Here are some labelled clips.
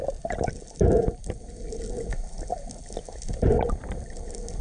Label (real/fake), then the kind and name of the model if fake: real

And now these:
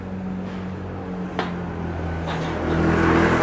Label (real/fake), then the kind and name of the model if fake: real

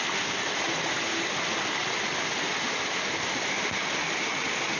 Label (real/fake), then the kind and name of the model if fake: real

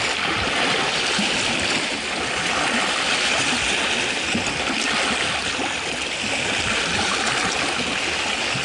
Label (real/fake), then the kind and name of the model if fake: real